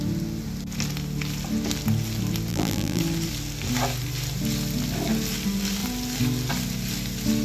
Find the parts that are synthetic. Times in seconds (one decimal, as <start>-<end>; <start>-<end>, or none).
2.5-3.0